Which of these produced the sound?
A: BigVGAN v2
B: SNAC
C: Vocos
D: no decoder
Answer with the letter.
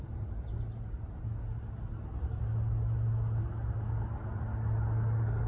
D